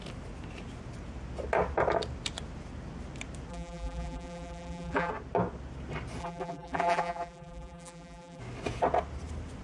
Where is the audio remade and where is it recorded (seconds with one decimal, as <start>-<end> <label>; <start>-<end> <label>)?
0.0-3.5 recorded; 3.5-5.1 remade; 5.1-6.2 recorded; 6.2-8.4 remade; 8.4-9.6 recorded